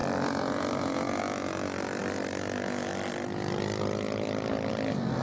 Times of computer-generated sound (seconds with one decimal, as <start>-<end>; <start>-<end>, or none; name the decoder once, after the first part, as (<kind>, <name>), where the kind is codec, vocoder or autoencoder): none